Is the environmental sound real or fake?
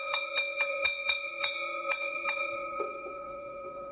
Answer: fake